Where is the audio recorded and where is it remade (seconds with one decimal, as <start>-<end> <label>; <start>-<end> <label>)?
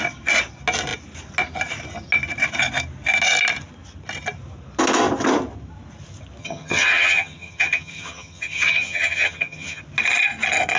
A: 0.0-6.4 recorded; 6.4-9.8 remade; 9.8-10.8 recorded